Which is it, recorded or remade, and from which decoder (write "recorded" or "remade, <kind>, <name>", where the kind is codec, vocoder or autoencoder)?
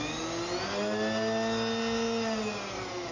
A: recorded